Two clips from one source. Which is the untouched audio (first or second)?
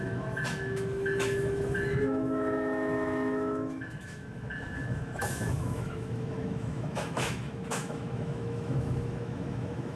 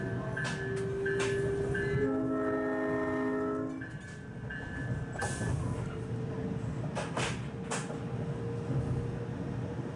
second